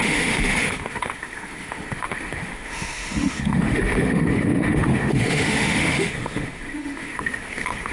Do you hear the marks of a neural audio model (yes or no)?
yes